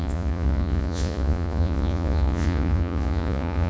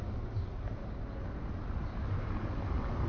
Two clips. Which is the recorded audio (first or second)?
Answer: second